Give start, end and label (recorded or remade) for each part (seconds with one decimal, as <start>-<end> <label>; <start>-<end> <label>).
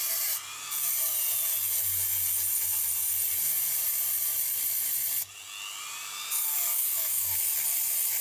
0.0-6.7 recorded; 6.7-7.4 remade; 7.4-8.2 recorded